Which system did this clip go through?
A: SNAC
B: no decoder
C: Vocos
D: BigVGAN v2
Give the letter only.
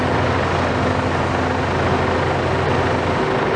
B